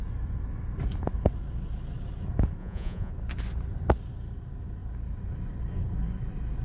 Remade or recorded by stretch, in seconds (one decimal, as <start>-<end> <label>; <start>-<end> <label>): 0.0-2.6 recorded; 2.6-3.1 remade; 3.1-6.6 recorded